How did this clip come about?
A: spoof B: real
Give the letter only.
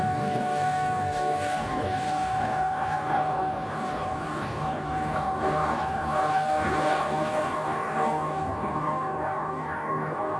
A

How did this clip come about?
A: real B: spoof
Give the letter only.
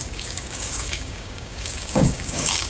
B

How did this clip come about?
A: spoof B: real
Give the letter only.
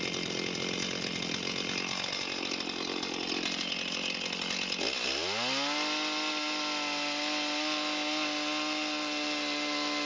B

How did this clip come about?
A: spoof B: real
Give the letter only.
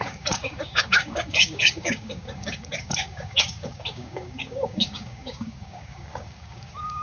A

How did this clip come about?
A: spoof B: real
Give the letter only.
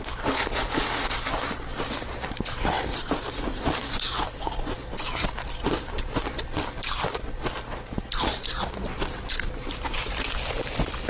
B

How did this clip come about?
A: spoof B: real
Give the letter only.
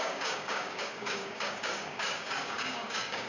A